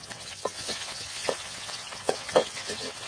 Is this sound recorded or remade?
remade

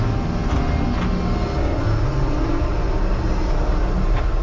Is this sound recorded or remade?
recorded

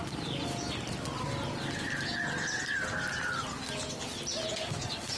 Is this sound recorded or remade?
recorded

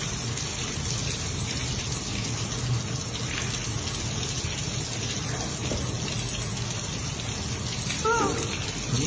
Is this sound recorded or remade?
recorded